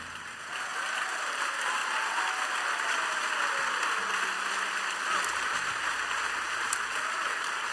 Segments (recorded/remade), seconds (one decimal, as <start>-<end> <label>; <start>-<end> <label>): 0.0-0.7 remade; 0.7-1.2 recorded; 1.2-1.8 remade; 1.8-5.1 recorded; 5.1-7.7 remade